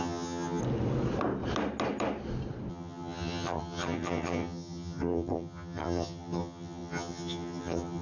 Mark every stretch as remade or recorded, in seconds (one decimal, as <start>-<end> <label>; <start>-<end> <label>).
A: 0.0-0.6 remade; 0.6-2.7 recorded; 2.7-8.0 remade